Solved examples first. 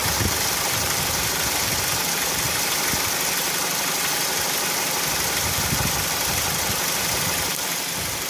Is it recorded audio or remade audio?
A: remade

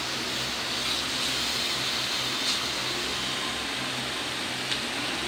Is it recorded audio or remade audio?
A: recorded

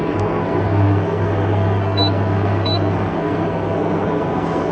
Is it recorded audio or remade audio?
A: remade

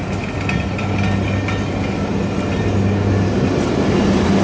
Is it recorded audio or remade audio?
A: recorded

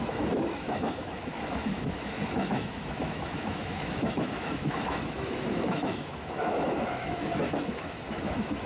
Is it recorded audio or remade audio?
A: remade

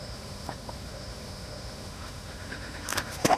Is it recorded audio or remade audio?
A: remade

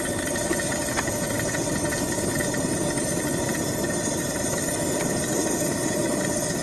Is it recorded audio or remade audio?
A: recorded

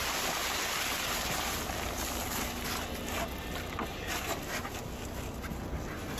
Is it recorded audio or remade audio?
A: recorded